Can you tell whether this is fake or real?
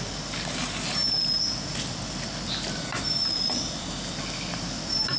real